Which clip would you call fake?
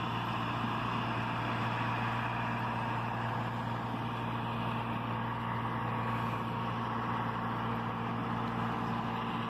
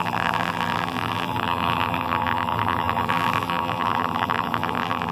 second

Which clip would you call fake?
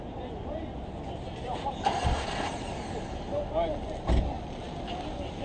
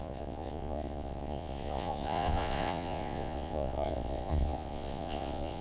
second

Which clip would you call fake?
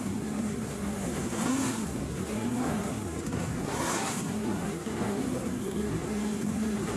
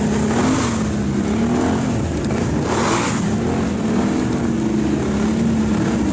first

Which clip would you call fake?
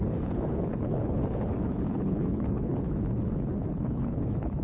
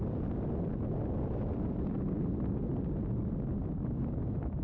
first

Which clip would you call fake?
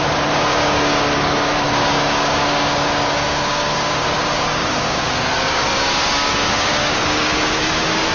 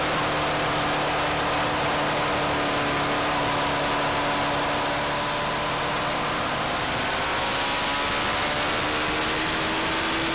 first